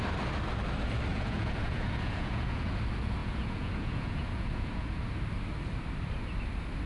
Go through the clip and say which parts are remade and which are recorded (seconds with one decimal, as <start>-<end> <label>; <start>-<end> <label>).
0.0-1.1 recorded; 1.1-2.8 remade; 2.8-3.2 recorded; 3.2-5.0 remade; 5.0-6.9 recorded